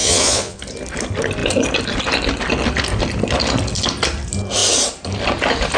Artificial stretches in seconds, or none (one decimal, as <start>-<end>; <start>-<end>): 0.0-0.6